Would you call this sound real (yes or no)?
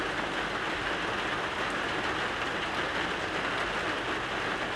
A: yes